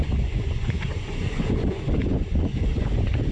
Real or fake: fake